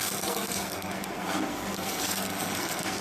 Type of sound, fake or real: fake